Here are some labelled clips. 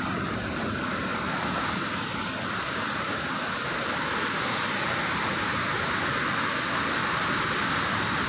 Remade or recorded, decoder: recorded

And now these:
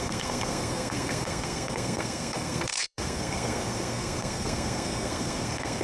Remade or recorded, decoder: remade, codec, SNAC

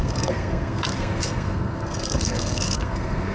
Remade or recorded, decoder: remade, codec, SNAC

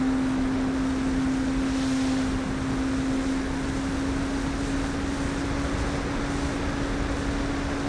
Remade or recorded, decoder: recorded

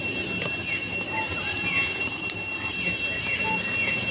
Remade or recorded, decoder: recorded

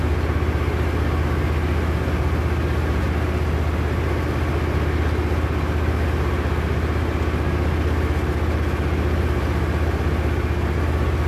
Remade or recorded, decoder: recorded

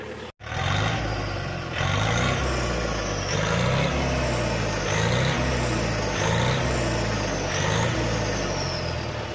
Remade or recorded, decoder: recorded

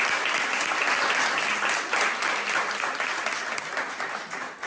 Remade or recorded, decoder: recorded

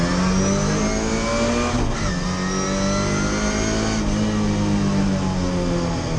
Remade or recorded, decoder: recorded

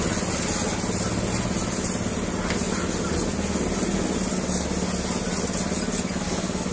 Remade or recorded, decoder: recorded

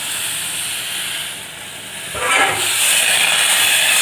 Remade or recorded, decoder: recorded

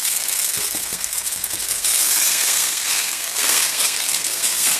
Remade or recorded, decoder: remade, codec, SNAC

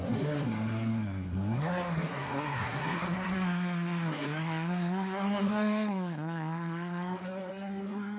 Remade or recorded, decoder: remade, codec, SNAC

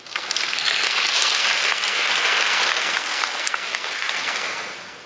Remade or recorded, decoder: remade, codec, SNAC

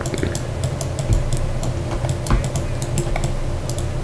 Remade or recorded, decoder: recorded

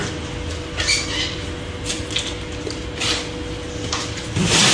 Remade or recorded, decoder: recorded